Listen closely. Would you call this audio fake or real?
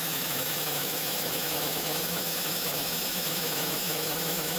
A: fake